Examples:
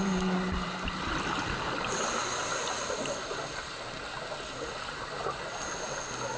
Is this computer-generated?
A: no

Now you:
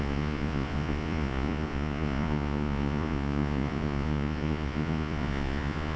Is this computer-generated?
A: yes